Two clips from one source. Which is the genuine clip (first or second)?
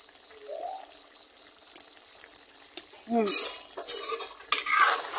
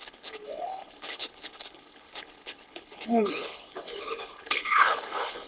first